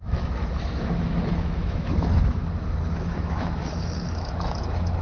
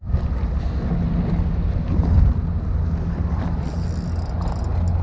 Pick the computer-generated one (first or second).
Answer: first